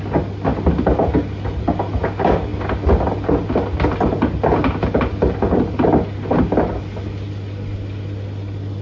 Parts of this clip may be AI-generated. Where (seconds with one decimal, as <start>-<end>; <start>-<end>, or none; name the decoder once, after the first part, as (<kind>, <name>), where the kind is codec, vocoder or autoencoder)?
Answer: none